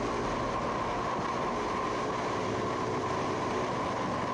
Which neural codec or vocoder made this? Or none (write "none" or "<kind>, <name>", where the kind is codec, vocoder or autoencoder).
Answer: none